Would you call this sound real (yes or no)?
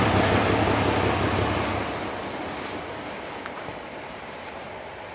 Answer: yes